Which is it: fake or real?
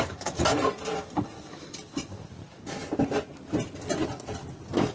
real